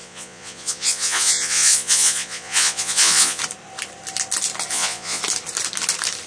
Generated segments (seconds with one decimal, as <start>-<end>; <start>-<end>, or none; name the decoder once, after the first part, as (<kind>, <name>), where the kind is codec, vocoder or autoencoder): 0.0-3.4 (vocoder, Vocos); 4.7-5.2